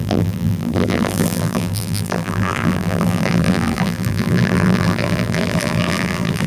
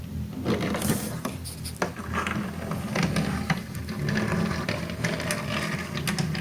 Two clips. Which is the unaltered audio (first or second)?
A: second